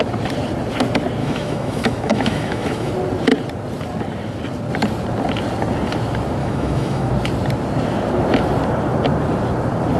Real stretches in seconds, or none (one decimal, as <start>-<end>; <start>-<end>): 0.0-1.2; 2.9-6.4; 7.1-10.0